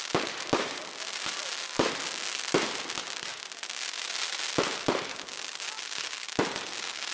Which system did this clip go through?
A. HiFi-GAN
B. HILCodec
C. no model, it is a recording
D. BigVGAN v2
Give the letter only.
C